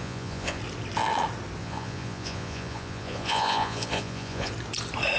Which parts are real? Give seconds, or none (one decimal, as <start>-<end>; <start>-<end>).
0.6-1.6; 4.5-5.2